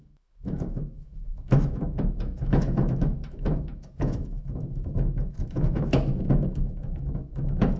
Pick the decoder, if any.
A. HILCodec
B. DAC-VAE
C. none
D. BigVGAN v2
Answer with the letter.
B